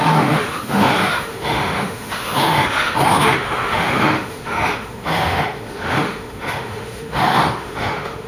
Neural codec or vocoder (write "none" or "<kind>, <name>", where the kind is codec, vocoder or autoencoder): autoencoder, DAC-VAE